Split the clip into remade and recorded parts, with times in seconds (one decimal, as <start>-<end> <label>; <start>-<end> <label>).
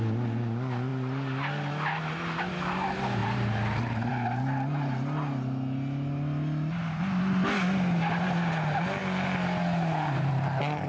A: 0.0-10.9 recorded